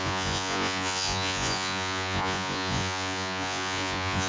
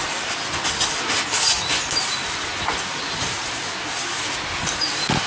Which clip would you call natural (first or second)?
second